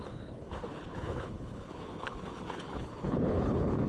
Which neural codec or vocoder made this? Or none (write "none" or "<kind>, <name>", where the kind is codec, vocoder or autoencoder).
codec, HILCodec